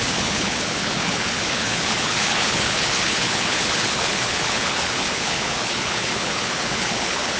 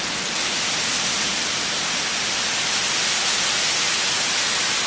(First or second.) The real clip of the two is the second